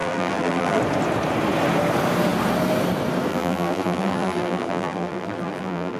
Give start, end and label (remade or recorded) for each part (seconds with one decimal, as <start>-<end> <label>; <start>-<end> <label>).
0.0-0.8 remade; 0.8-3.3 recorded; 3.3-6.0 remade